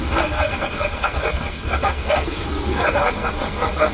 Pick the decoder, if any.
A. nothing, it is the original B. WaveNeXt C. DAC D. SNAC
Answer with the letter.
D